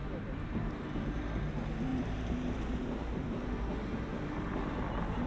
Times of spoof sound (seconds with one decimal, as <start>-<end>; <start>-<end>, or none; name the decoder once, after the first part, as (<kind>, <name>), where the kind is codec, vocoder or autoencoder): 0.0-1.3 (vocoder, BigVGAN v2); 1.9-3.5; 4.1-4.7